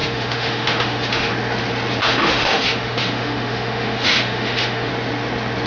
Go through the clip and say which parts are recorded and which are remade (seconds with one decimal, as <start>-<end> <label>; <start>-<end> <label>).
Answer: 0.0-1.3 remade; 1.3-2.0 recorded; 2.0-4.9 remade; 4.9-5.7 recorded